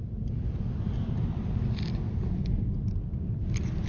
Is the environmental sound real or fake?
real